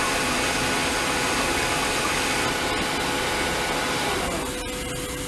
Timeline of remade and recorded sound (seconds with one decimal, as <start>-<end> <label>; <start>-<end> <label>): 0.0-5.3 recorded